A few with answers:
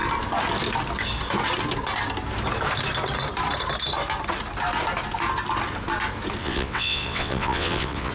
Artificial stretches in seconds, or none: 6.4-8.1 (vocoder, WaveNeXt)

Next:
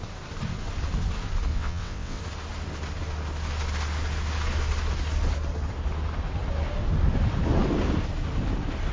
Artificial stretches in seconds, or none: 1.5-2.2 (vocoder, WaveNeXt)

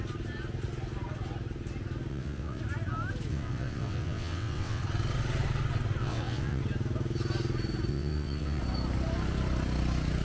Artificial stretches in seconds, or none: 2.1-2.6 (vocoder, WaveNeXt); 3.3-4.8; 6.0-6.6; 7.9-8.6

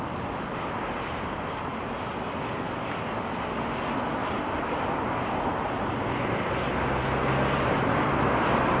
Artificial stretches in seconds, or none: none

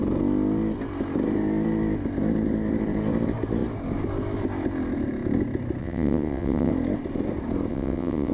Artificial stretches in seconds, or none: 5.8-6.7 (vocoder, WaveNeXt); 7.7-8.3